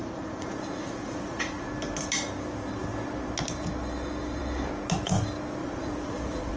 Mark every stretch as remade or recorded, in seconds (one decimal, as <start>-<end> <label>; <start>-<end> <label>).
0.0-1.7 remade; 1.7-5.6 recorded; 5.6-6.6 remade